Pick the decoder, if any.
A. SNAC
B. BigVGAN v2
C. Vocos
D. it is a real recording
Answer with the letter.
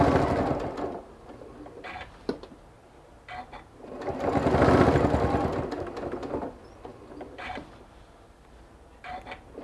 D